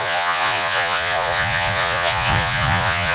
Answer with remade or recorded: remade